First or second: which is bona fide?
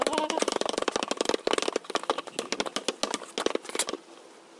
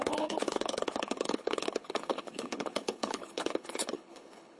first